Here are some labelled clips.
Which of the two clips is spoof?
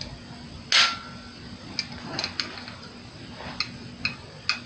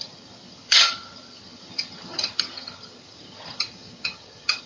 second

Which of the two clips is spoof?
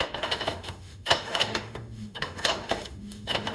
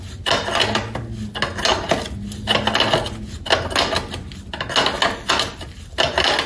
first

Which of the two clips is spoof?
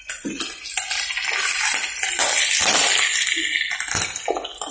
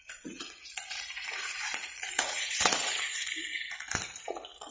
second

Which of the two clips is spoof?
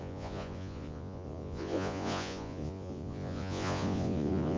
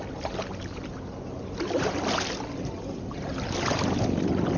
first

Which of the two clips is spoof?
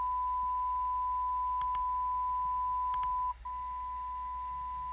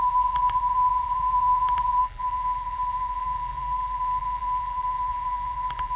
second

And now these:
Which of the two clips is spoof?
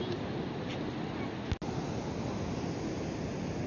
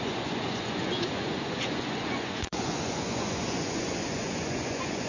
second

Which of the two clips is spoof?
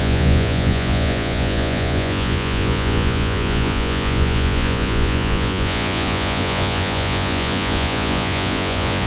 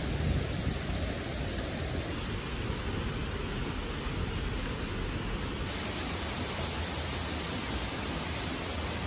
first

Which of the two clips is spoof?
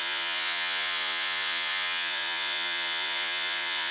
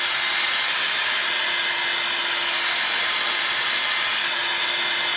first